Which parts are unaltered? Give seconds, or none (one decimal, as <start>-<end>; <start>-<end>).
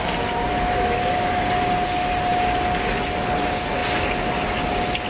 0.0-5.1